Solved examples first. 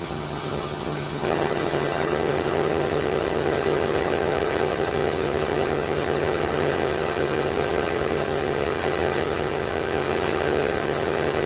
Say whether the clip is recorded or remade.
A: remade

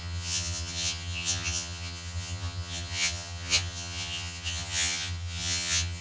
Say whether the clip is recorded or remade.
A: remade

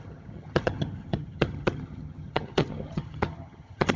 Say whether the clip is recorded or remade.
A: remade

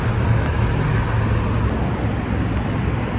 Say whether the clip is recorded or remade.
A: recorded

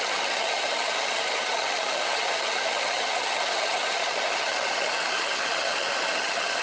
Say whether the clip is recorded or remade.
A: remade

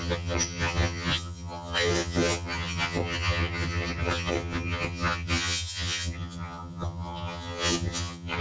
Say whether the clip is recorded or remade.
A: remade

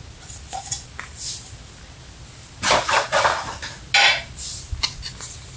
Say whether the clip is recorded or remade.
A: recorded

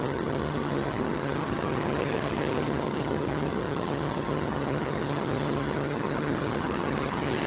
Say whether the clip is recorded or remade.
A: remade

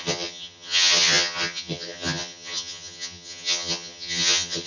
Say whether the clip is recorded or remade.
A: remade